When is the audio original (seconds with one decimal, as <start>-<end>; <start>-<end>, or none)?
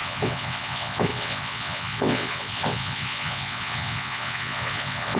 none